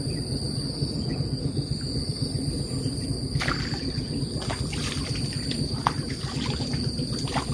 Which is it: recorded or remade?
recorded